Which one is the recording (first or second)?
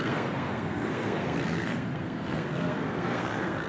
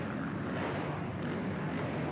second